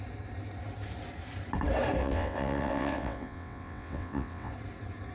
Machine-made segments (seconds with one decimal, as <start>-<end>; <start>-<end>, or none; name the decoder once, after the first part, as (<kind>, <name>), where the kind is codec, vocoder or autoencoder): 2.0-4.5 (vocoder, WaveNeXt)